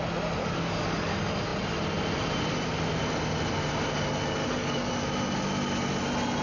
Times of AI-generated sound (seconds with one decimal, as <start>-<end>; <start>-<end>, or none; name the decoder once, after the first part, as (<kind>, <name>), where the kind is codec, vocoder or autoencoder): 0.4-1.1 (codec, DAC); 4.4-4.9